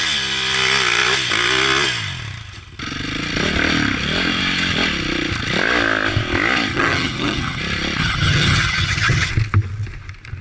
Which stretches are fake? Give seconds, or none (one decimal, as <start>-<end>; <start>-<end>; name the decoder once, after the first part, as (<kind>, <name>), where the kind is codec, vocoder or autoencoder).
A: 6.7-7.6 (vocoder, HiFi-GAN); 8.0-9.3

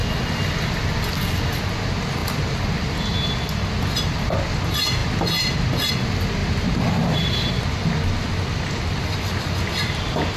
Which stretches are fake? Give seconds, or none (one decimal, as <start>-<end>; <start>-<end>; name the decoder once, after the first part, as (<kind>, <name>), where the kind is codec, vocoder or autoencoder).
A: 2.2-2.9 (vocoder, BigVGAN v2); 6.4-9.6

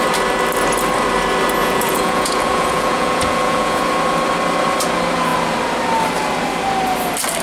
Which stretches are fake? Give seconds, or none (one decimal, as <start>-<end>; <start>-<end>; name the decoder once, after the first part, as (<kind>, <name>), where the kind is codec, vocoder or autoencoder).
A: 1.6-3.8 (vocoder, Vocos)